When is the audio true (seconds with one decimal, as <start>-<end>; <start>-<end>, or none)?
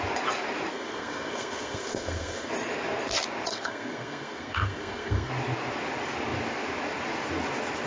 0.0-0.7; 2.5-3.5; 5.3-7.9